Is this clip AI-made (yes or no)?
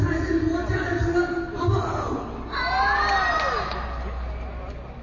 no